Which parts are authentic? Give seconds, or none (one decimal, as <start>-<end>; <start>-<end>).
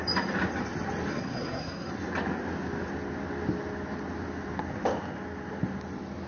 0.0-1.1; 1.9-6.3